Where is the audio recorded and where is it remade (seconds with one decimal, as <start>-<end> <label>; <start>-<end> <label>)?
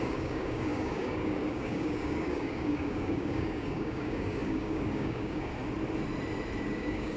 0.0-5.5 remade; 5.5-6.6 recorded; 6.6-7.2 remade